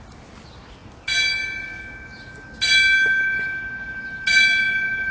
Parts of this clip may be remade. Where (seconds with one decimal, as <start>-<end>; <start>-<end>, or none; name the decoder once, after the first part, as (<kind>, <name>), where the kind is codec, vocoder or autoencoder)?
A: none

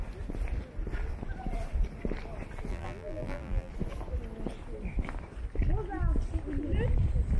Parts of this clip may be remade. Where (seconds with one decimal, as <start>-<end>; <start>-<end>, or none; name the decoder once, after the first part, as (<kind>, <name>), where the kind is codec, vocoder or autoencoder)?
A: 2.7-3.7 (vocoder, BigVGAN v2)

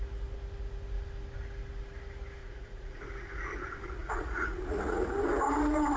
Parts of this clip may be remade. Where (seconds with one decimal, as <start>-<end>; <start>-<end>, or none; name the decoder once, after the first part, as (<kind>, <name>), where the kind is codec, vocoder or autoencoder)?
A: 2.4-3.0 (vocoder, Vocos); 4.0-5.1